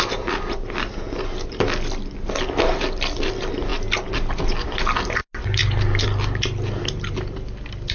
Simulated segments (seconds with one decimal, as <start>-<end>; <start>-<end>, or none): none